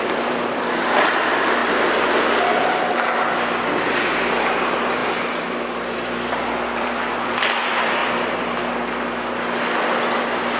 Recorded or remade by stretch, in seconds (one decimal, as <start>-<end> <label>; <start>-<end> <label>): 0.0-1.6 remade; 1.6-3.3 recorded; 3.3-8.0 remade; 8.0-10.6 recorded